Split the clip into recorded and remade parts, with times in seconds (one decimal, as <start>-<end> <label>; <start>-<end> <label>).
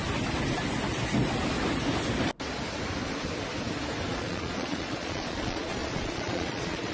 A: 0.0-4.1 recorded; 4.1-6.9 remade